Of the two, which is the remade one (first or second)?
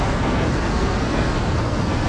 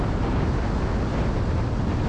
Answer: first